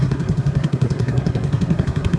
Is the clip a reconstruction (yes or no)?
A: yes